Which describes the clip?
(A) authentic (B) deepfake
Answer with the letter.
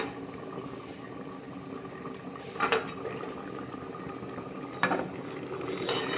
A